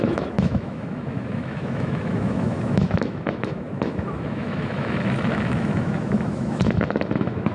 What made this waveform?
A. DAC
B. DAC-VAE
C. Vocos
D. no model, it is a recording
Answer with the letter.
B